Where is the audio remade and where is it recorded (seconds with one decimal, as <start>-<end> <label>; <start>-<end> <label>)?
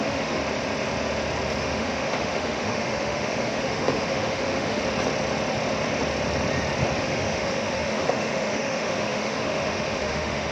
0.0-0.4 remade; 0.4-1.6 recorded; 1.6-4.8 remade; 4.8-7.0 recorded; 7.0-10.5 remade